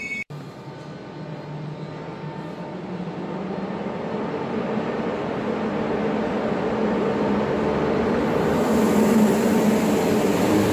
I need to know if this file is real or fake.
real